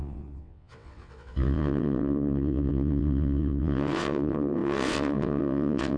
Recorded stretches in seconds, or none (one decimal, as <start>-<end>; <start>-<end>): none